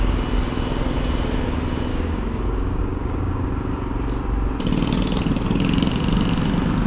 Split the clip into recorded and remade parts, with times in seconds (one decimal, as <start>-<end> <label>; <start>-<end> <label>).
0.0-1.9 recorded; 1.9-3.9 remade; 3.9-6.9 recorded

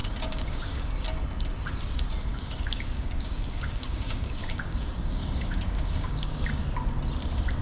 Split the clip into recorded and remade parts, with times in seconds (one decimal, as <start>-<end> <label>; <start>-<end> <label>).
0.0-0.9 remade; 0.9-2.3 recorded; 2.3-6.6 remade; 6.6-7.6 recorded

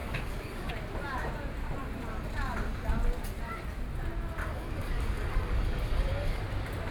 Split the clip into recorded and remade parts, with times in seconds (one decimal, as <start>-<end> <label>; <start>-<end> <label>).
0.0-0.7 remade; 0.7-4.4 recorded; 4.4-6.4 remade; 6.4-6.9 recorded

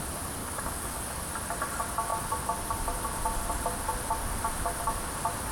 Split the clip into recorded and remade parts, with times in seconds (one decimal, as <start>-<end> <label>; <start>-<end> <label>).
0.0-0.4 recorded; 0.4-1.2 remade; 1.2-5.5 recorded

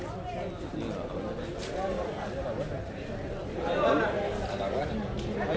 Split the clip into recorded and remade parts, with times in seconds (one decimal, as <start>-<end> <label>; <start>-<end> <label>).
0.0-5.6 recorded

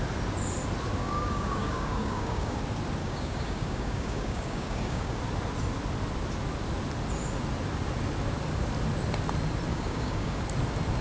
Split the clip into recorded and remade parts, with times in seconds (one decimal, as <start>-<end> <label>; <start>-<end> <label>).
0.0-1.0 recorded; 1.0-2.6 remade; 2.6-3.0 recorded; 3.0-5.2 remade; 5.2-9.7 recorded; 9.7-10.4 remade; 10.4-11.0 recorded

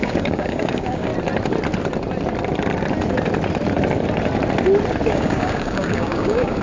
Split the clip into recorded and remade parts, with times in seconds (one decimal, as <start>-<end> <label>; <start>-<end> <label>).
0.0-1.1 remade; 1.1-5.1 recorded; 5.1-6.6 remade

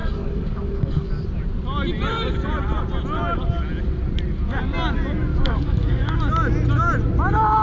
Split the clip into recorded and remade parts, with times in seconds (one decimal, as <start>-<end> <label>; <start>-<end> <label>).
0.0-1.1 remade; 1.1-5.3 recorded; 5.3-6.2 remade; 6.2-7.6 recorded